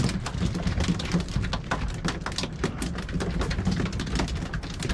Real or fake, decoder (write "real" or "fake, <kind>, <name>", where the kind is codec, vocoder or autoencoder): real